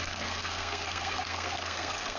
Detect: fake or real fake